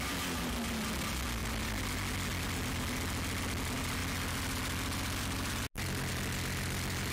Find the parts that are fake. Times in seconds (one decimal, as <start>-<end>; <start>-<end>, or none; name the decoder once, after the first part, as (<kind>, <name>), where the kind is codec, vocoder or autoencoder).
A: none